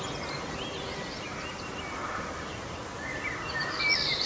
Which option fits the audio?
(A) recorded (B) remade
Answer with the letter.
A